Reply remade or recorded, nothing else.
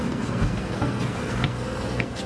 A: remade